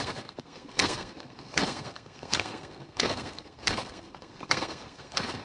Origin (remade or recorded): remade